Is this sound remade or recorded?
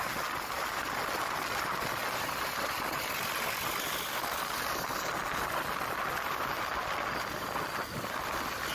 recorded